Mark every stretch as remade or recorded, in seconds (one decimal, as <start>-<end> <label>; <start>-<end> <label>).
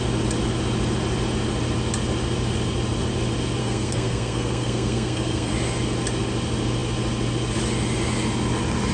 0.0-3.6 recorded; 3.6-5.5 remade; 5.5-8.9 recorded